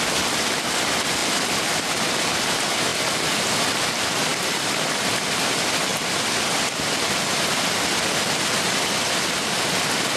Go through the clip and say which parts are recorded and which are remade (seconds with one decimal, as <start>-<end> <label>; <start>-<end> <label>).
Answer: 0.0-10.2 recorded